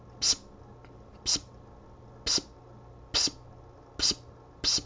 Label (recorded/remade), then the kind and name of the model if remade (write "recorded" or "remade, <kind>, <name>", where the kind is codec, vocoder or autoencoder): recorded